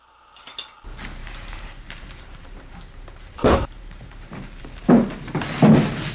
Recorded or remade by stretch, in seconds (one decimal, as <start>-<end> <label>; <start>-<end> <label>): 0.0-1.2 recorded; 1.2-4.9 remade; 4.9-6.1 recorded